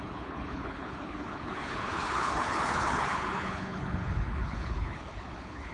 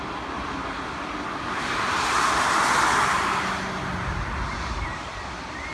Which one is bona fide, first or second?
second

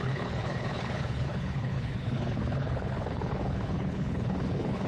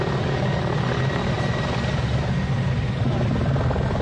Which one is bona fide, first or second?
second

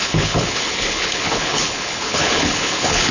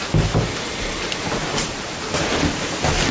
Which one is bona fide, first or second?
second